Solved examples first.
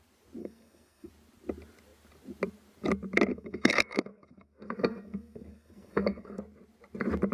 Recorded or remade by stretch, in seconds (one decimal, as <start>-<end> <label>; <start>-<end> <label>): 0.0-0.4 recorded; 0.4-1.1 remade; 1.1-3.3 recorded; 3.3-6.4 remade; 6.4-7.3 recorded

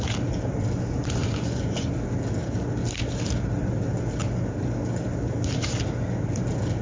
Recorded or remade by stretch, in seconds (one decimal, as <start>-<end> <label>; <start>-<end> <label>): 0.0-1.2 recorded; 1.2-1.9 remade; 1.9-6.8 recorded

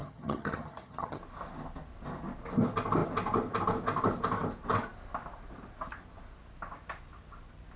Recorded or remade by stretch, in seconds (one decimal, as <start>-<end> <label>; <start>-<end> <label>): 0.0-1.2 remade; 1.2-7.8 recorded